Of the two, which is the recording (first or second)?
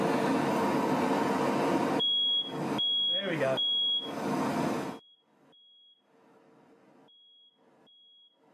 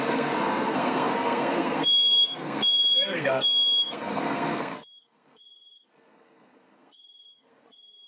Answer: first